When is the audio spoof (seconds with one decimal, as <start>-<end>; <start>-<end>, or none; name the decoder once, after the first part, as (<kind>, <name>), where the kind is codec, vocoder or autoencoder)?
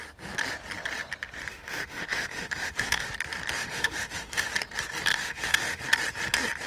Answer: 1.5-3.1 (autoencoder, DAC-VAE); 3.6-4.5; 5.1-5.8